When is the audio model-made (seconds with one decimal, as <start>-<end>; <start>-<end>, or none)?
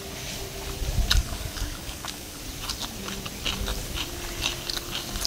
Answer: 1.2-2.4